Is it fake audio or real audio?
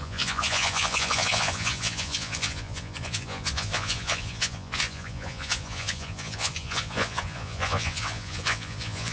fake